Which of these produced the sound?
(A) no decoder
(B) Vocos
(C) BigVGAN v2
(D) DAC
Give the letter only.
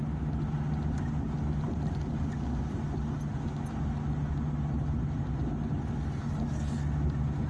A